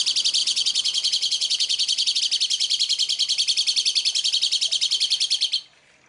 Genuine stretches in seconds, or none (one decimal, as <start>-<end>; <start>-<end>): 0.0-0.4; 2.2-6.1